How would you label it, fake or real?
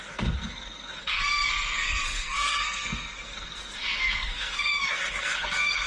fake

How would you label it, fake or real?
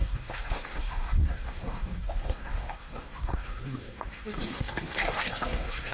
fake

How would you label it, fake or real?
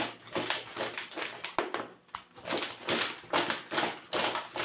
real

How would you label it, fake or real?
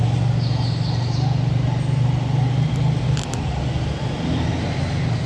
real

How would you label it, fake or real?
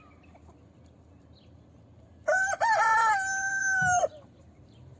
fake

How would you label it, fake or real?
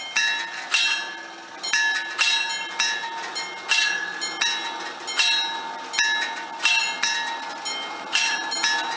real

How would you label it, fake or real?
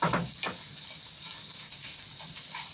fake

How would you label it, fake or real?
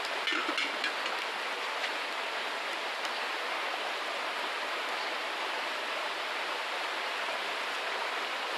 real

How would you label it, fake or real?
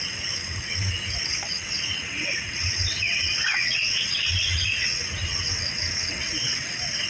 fake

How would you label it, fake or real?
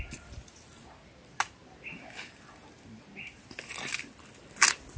real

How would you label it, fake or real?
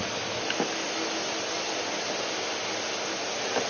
real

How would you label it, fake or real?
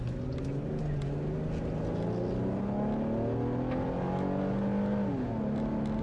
real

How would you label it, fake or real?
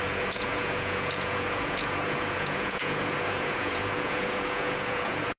fake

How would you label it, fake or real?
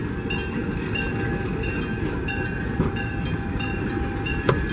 real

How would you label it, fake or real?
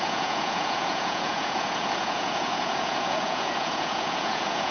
fake